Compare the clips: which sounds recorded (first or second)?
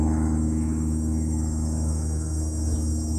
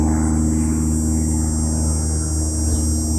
second